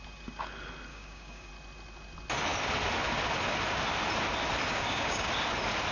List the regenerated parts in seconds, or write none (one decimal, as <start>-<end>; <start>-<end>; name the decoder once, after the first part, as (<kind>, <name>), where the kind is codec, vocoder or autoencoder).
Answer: 0.9-1.5 (codec, DAC); 4.7-5.3